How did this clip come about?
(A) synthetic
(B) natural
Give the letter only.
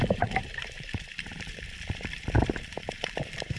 A